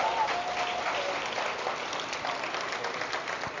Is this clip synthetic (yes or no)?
yes